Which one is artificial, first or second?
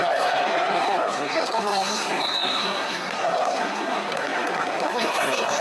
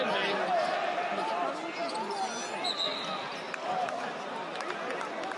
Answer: first